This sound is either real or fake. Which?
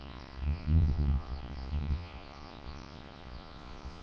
fake